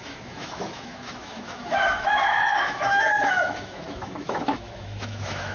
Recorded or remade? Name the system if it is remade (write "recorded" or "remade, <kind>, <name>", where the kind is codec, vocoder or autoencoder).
remade, autoencoder, DAC-VAE